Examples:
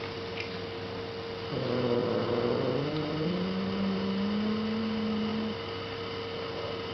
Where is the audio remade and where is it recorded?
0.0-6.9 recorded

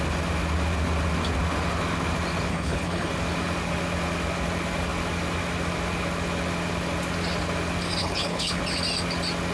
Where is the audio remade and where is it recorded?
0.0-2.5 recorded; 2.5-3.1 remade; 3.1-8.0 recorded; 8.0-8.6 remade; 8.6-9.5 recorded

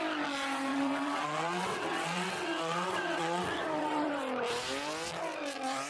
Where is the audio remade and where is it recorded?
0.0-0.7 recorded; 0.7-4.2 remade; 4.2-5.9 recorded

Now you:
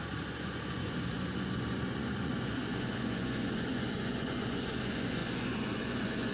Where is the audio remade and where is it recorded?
0.0-6.3 remade

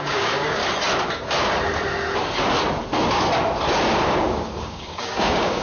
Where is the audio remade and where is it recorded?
0.0-0.6 remade; 0.6-4.0 recorded; 4.0-5.6 remade

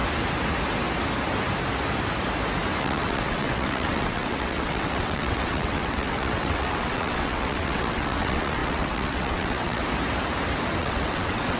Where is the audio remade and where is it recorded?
0.0-2.8 recorded; 2.8-9.8 remade; 9.8-10.8 recorded; 10.8-11.6 remade

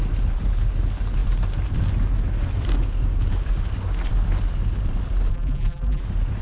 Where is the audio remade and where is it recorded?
0.0-5.3 recorded; 5.3-6.0 remade; 6.0-6.4 recorded

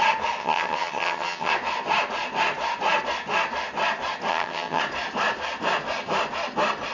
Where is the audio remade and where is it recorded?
0.0-0.4 recorded; 0.4-1.5 remade; 1.5-4.3 recorded; 4.3-4.8 remade; 4.8-6.9 recorded